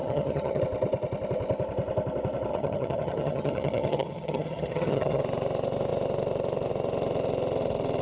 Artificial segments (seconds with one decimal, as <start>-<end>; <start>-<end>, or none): 0.0-0.6; 2.5-5.2